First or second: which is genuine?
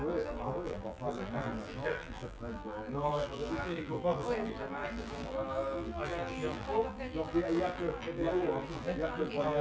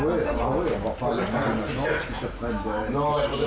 second